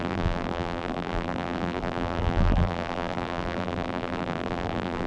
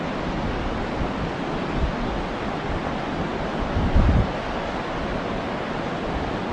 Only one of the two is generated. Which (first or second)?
first